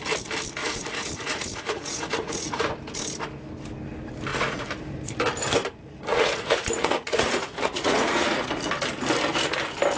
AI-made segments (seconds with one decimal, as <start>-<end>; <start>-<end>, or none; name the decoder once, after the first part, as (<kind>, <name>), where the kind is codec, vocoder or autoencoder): 0.6-2.7 (vocoder, Vocos); 4.3-4.8; 6.1-8.5